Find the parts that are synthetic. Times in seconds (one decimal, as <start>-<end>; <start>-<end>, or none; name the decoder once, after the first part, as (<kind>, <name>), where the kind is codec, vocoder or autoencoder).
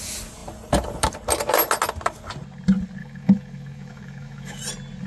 3.0-4.6 (autoencoder, DAC-VAE)